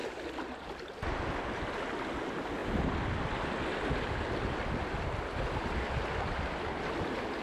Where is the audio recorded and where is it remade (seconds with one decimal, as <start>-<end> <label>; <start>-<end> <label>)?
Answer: 0.0-7.4 recorded